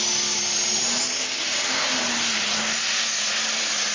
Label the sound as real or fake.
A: real